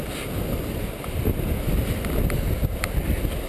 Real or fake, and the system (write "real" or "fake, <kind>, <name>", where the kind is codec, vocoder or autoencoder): real